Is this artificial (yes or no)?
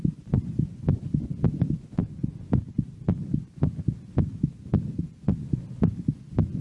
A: yes